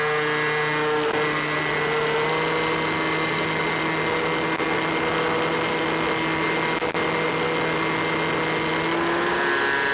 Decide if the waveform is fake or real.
real